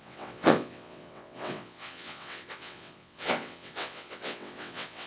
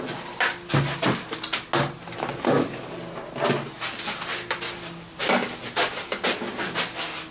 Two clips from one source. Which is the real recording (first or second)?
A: second